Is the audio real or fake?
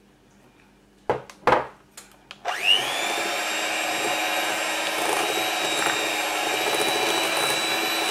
real